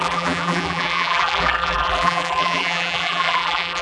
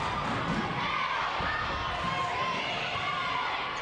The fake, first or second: first